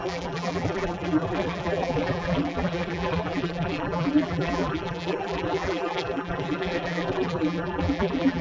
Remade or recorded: remade